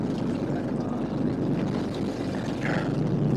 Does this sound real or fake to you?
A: real